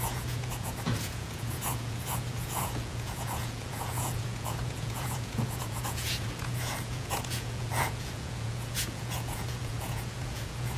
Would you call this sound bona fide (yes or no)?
no